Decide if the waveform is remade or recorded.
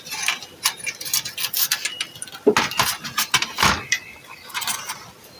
recorded